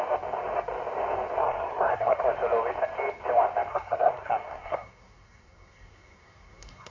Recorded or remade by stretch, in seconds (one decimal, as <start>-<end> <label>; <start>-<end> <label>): 0.0-1.4 recorded; 1.4-2.3 remade; 2.3-3.7 recorded; 3.7-6.9 remade